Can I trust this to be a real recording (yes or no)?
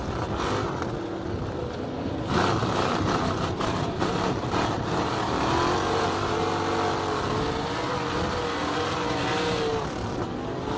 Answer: yes